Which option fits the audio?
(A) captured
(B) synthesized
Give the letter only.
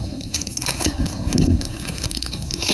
B